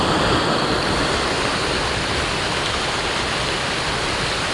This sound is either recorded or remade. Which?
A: recorded